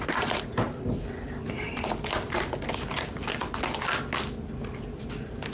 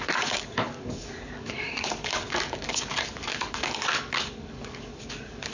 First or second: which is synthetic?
second